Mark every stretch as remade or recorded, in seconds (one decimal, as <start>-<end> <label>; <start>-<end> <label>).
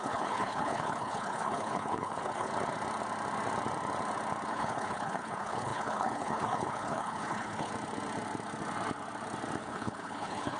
0.0-2.5 remade; 2.5-4.5 recorded; 4.5-7.7 remade; 7.7-9.6 recorded; 9.6-10.6 remade